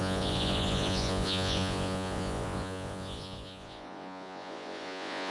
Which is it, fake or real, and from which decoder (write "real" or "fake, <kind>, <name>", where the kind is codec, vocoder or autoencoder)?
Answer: fake, vocoder, Vocos